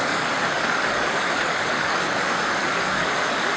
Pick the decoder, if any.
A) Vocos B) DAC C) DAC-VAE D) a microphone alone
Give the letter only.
B